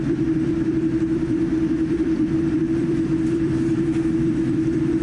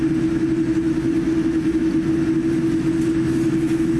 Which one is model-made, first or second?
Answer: first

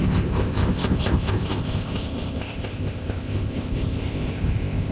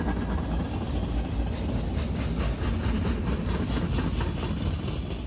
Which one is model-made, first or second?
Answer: first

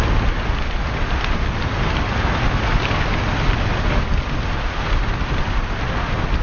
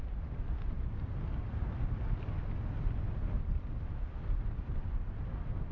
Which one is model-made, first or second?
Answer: second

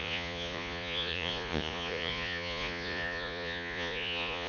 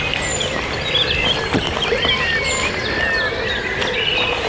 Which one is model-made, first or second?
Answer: first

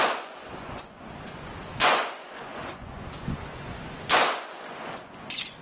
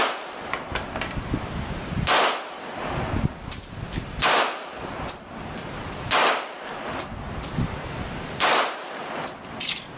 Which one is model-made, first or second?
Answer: first